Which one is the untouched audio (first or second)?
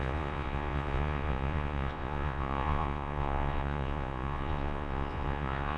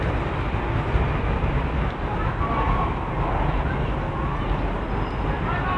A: second